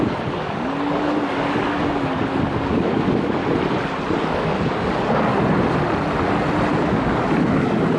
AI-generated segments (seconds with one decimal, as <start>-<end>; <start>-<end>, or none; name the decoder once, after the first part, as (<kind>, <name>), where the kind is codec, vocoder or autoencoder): 0.0-3.4 (codec, DAC); 4.2-5.3; 6.7-8.0